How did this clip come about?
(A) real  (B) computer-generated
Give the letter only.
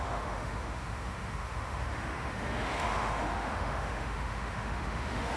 B